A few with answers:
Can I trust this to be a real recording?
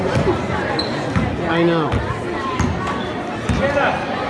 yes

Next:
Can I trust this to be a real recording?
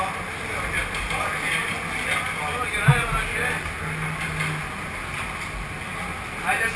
yes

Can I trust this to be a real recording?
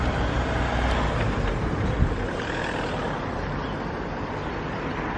yes